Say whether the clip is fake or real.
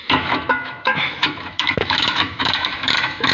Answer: fake